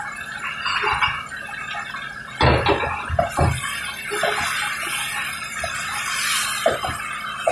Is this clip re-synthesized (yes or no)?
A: no